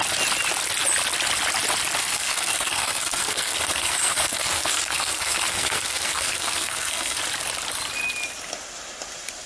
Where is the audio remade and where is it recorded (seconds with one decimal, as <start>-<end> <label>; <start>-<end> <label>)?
0.0-2.0 recorded; 2.0-7.2 remade; 7.2-9.5 recorded